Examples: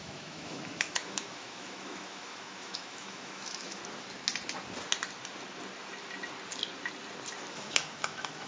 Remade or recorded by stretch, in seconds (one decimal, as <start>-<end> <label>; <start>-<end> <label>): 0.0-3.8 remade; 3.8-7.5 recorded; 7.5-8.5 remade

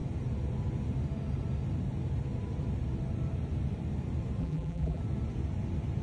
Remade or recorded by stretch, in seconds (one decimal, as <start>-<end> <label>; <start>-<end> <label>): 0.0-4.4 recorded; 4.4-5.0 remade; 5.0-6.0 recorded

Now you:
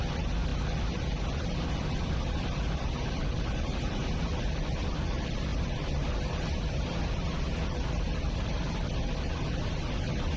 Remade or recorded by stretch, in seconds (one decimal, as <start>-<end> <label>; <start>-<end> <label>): 0.0-10.4 recorded

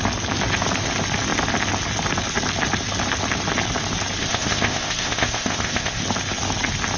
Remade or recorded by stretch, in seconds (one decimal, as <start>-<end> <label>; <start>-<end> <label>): 0.0-4.2 recorded; 4.2-6.0 remade; 6.0-7.0 recorded